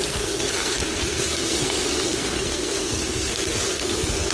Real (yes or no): no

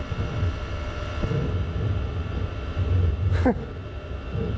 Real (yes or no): yes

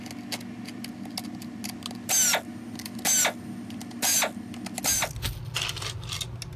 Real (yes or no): yes